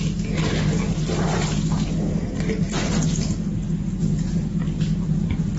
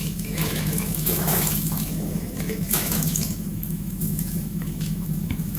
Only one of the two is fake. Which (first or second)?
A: second